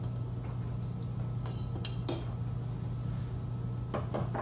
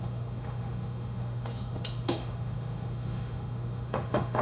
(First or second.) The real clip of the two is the first